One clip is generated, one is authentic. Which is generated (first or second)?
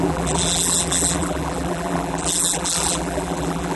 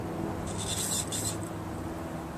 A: first